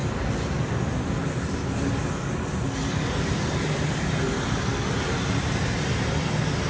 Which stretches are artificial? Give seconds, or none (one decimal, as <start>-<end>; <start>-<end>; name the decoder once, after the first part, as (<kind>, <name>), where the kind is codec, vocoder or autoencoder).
none